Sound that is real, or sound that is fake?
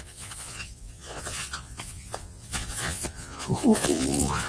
fake